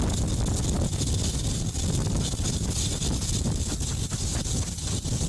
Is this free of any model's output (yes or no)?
yes